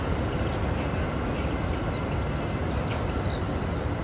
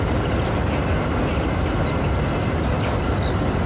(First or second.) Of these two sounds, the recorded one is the first